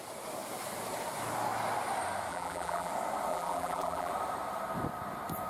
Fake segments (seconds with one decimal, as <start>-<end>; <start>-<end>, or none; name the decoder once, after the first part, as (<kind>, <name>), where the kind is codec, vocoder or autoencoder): 2.3-2.9 (vocoder, BigVGAN v2); 3.3-4.1

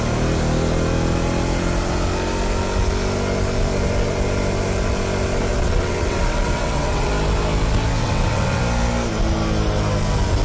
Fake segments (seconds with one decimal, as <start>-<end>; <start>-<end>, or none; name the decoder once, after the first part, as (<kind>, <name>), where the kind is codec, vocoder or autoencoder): 5.5-7.1 (vocoder, WaveNeXt); 8.0-8.6

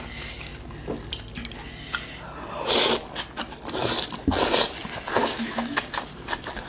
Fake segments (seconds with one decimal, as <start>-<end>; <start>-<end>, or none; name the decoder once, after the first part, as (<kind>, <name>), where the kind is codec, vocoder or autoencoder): 5.2-5.8 (autoencoder, DAC-VAE)

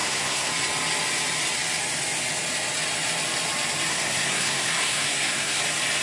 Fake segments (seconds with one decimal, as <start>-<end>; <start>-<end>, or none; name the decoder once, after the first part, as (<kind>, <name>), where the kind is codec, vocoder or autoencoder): 0.0-0.5 (codec, SNAC); 3.9-5.6

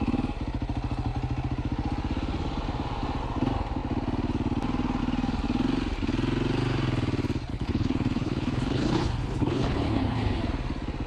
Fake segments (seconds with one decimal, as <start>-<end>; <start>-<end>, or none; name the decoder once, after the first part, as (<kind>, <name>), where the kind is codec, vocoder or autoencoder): 7.5-10.4 (codec, HILCodec)

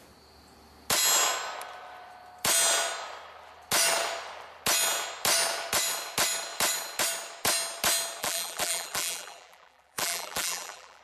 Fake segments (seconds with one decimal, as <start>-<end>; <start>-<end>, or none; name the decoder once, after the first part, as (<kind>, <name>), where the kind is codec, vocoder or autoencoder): 8.2-11.0 (vocoder, BigVGAN v2)

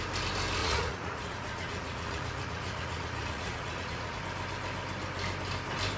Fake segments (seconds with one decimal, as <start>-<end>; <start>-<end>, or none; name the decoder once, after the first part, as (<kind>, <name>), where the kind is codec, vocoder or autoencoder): 0.6-4.2 (vocoder, Vocos)

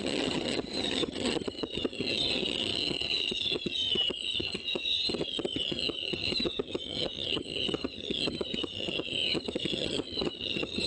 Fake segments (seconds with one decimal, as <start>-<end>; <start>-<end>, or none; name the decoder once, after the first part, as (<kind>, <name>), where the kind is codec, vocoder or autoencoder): 0.0-10.9 (vocoder, HiFi-GAN)